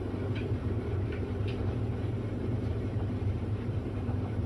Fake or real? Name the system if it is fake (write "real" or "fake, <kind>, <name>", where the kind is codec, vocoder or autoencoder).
fake, vocoder, BigVGAN v2